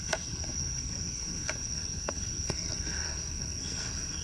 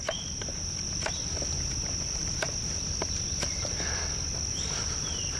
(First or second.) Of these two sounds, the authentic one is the second